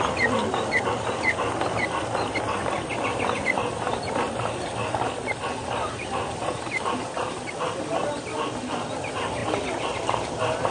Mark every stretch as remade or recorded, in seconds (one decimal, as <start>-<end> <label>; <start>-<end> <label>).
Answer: 0.0-10.7 recorded